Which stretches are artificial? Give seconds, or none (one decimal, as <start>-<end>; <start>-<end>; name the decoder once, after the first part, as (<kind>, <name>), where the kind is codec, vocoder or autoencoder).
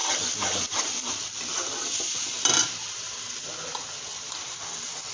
0.0-3.1 (vocoder, BigVGAN v2); 4.1-5.1